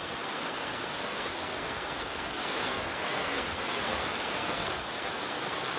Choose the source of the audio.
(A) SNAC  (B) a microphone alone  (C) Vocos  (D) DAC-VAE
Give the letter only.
A